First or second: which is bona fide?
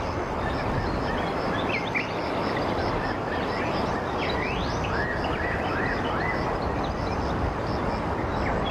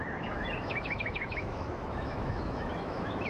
first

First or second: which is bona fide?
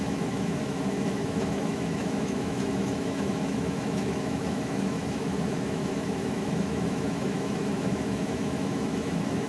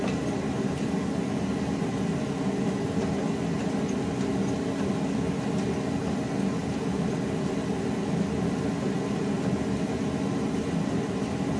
second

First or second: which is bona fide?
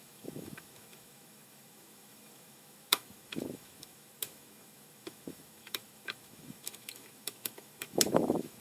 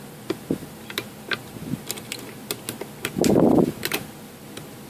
second